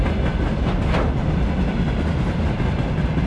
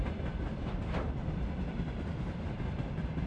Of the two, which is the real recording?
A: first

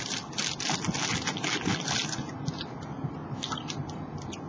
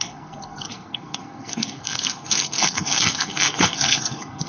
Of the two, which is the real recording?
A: first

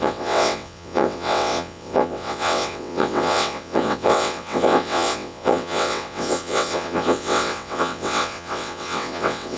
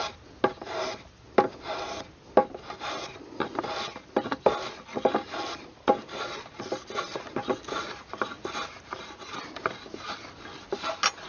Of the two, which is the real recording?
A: second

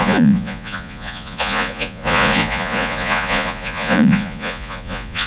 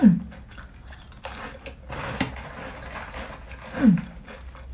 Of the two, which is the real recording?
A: second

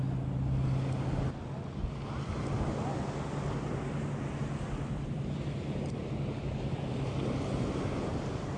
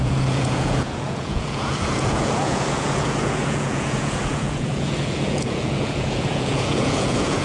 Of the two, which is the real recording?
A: first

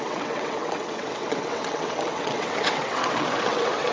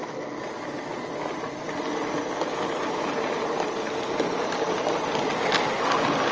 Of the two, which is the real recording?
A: second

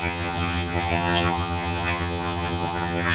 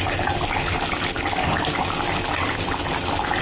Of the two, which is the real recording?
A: second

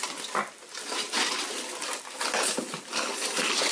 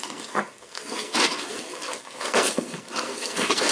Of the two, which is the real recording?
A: first